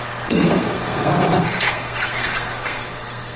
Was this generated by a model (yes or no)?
yes